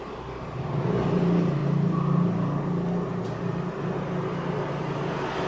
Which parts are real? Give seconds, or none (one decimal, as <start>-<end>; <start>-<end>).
0.0-5.5